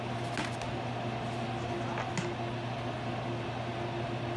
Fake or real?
real